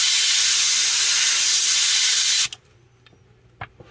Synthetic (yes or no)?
no